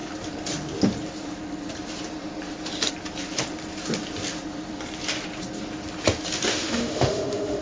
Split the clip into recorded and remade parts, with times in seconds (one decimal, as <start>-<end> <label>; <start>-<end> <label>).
0.0-6.5 recorded; 6.5-7.6 remade